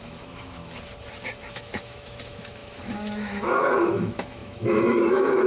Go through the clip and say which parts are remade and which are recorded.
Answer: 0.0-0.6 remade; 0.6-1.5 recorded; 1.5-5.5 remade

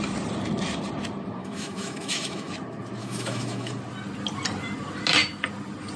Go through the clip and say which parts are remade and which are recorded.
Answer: 0.0-1.4 recorded; 1.4-2.5 remade; 2.5-3.0 recorded; 3.0-3.7 remade; 3.7-6.0 recorded

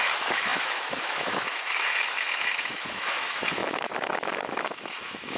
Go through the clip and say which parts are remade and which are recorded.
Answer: 0.0-5.4 remade

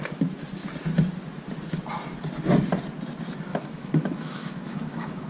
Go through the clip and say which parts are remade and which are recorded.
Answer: 0.0-3.5 recorded; 3.5-5.3 remade

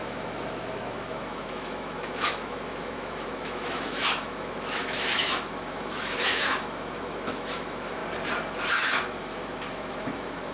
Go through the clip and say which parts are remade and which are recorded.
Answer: 0.0-8.0 remade; 8.0-8.7 recorded; 8.7-10.5 remade

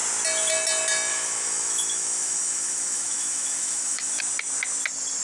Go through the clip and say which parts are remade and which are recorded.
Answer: 0.0-1.1 recorded; 1.1-4.2 remade; 4.2-5.2 recorded

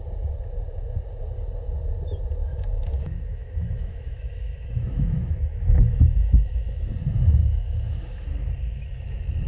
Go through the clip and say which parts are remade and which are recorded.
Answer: 0.0-2.5 recorded; 2.5-6.9 remade; 6.9-7.4 recorded; 7.4-8.2 remade; 8.2-9.5 recorded